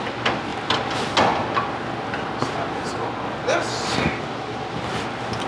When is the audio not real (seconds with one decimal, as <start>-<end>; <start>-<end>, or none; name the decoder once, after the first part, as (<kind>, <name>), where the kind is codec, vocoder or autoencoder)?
none